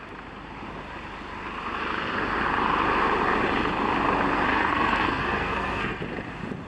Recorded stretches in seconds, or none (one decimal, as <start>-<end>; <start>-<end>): 0.0-4.5; 6.0-6.7